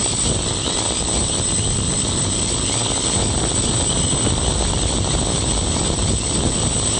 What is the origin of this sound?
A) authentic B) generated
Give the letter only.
A